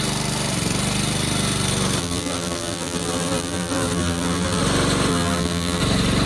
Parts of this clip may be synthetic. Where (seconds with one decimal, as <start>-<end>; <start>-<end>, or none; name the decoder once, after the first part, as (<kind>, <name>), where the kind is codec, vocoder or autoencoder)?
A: 2.0-4.6 (vocoder, BigVGAN v2); 5.1-5.8